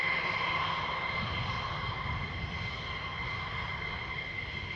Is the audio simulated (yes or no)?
no